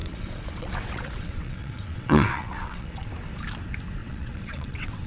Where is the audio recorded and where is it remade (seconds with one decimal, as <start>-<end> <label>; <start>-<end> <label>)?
0.0-3.1 remade; 3.1-4.0 recorded; 4.0-5.1 remade